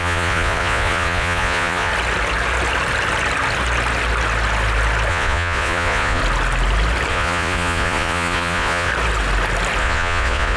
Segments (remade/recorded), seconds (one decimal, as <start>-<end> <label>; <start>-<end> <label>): 0.0-1.9 remade; 1.9-5.1 recorded; 5.1-6.2 remade; 6.2-7.1 recorded; 7.1-8.9 remade; 8.9-9.8 recorded; 9.8-10.6 remade